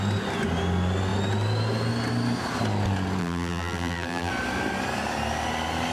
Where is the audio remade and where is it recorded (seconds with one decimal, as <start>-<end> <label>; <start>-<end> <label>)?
0.0-3.2 recorded; 3.2-4.3 remade; 4.3-5.9 recorded